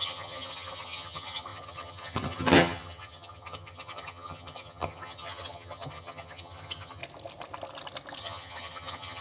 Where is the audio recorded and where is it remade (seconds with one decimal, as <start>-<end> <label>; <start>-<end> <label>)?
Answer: 0.0-7.0 remade; 7.0-8.2 recorded; 8.2-9.2 remade